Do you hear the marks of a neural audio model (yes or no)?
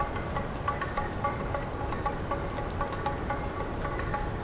no